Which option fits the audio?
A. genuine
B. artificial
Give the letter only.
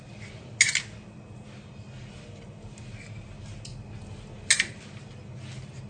A